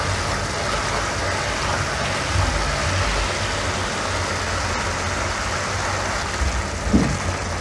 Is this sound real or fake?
real